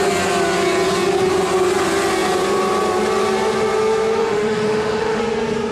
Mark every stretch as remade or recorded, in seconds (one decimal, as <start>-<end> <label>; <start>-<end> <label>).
0.0-4.2 recorded; 4.2-5.2 remade; 5.2-5.7 recorded